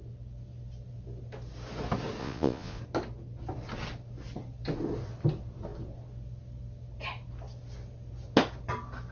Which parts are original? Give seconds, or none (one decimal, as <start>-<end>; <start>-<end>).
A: 0.0-2.2; 2.8-9.1